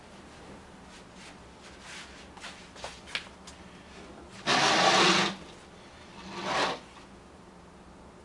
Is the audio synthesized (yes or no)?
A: no